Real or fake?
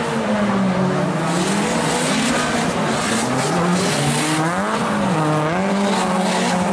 real